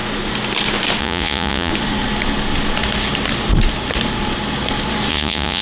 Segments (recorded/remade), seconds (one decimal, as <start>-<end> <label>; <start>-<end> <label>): 0.0-1.0 recorded; 1.0-1.7 remade; 1.7-5.1 recorded; 5.1-5.6 remade